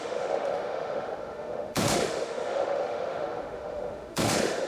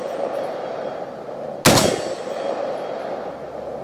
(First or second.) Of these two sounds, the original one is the second